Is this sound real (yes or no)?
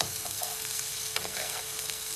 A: no